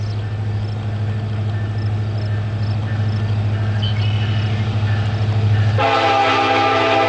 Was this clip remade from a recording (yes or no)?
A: no